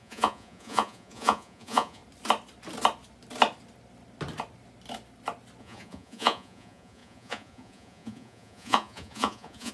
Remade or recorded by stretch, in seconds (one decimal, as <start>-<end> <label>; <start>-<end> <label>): 0.0-2.0 remade; 2.0-5.6 recorded; 5.6-9.7 remade